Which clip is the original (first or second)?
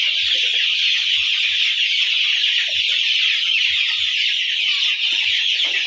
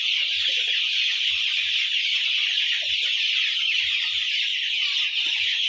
first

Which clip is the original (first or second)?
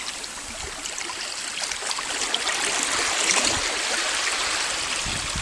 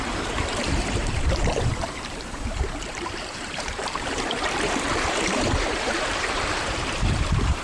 first